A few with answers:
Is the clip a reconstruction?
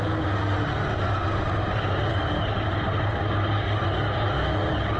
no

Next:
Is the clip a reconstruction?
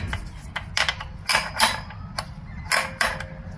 no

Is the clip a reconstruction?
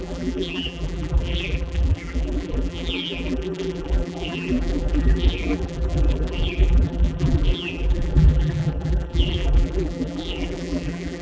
yes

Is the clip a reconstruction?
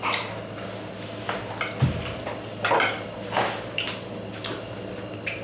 no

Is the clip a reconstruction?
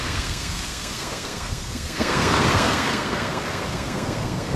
yes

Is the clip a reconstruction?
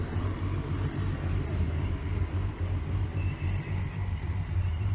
yes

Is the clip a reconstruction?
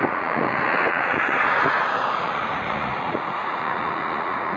yes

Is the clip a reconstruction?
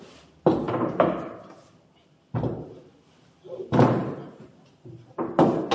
no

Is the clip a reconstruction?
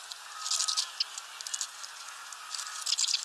no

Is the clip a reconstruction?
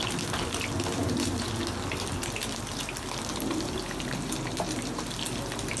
no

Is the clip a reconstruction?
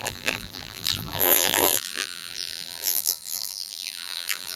yes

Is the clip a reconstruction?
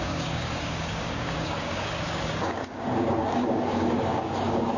yes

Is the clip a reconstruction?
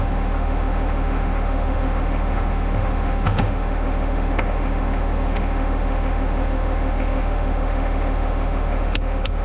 yes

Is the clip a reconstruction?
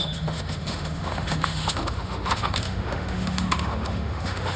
yes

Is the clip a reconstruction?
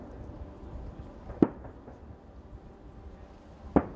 no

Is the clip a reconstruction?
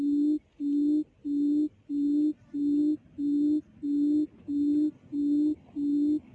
no